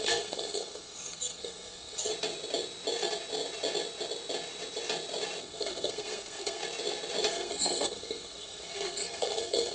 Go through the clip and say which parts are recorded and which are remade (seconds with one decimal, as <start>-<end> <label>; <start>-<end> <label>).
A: 0.0-2.1 remade; 2.1-5.4 recorded; 5.4-6.6 remade; 6.6-7.3 recorded; 7.3-9.7 remade